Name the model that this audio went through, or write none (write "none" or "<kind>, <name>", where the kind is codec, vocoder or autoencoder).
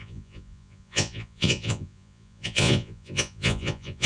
vocoder, Vocos